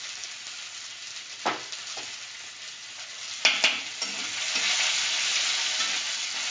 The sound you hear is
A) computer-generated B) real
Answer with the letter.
B